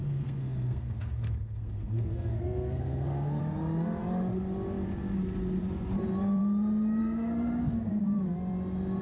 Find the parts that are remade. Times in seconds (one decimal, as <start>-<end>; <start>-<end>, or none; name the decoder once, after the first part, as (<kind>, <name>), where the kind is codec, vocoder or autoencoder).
0.0-3.4 (codec, SNAC); 7.0-8.0